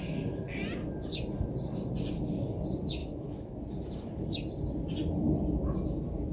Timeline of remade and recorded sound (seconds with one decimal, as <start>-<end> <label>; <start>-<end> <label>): 0.0-3.0 recorded; 3.0-3.6 remade; 3.6-6.3 recorded